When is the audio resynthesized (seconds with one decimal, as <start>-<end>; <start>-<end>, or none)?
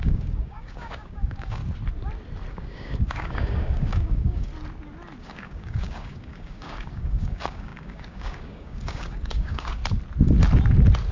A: 0.0-1.6; 2.5-4.5; 5.2-9.8